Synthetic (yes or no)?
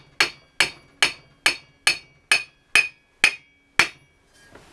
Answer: no